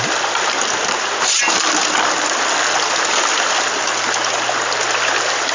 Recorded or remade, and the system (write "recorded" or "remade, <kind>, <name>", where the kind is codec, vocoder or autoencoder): recorded